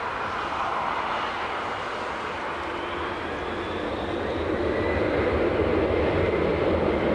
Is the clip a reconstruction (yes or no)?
no